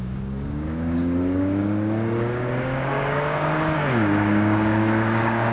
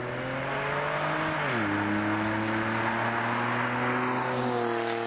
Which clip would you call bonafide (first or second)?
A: second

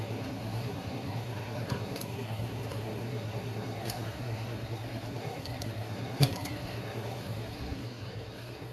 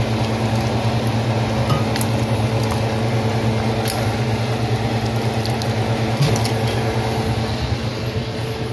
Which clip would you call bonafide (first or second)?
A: second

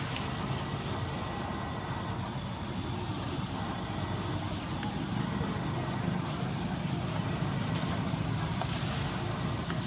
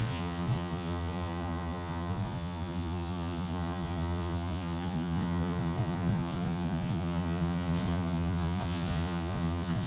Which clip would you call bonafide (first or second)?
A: first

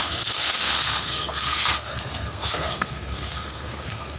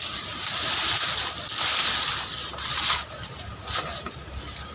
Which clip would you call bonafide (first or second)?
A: second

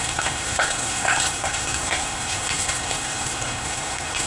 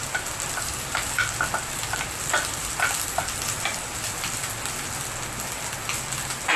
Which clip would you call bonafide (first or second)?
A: second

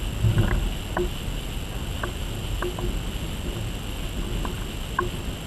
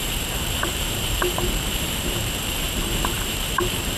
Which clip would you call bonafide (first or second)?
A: first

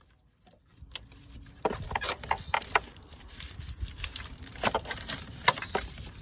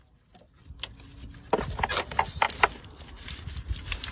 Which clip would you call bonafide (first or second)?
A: second